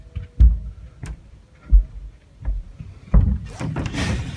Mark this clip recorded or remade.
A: recorded